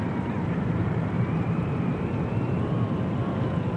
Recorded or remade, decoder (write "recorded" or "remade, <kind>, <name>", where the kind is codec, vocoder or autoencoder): remade, vocoder, BigVGAN v2